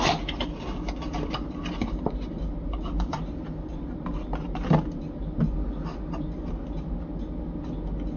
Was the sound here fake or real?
real